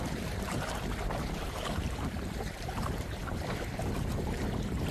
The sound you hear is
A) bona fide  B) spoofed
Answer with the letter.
B